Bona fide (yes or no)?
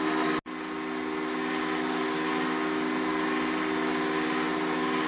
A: yes